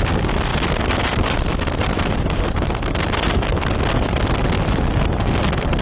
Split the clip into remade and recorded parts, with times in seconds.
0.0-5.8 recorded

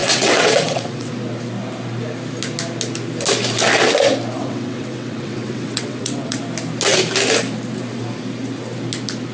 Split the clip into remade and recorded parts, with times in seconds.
0.0-1.1 remade; 1.1-4.4 recorded; 4.4-6.4 remade; 6.4-9.3 recorded

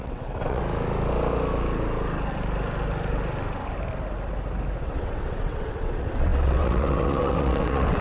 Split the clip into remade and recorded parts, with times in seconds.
0.0-0.6 remade; 0.6-4.8 recorded; 4.8-8.0 remade

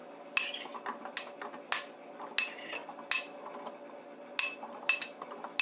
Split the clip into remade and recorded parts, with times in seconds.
0.0-5.6 recorded